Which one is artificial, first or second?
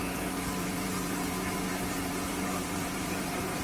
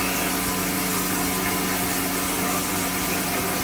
first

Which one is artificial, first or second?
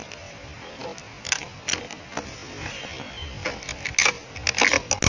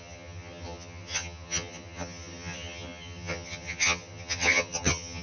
second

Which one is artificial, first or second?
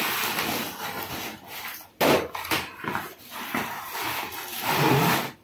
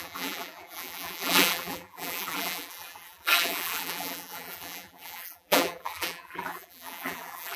second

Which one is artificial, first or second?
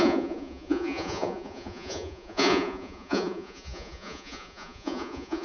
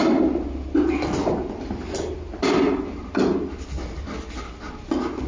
first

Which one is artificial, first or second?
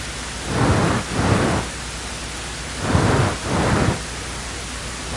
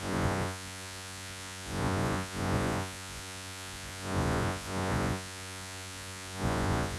second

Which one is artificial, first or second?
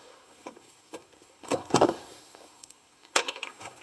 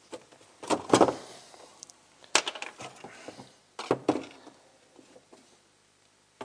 first